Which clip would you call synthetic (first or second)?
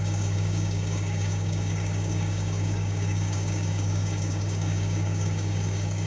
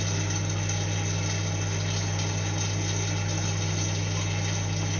first